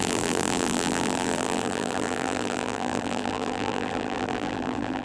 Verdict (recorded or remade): remade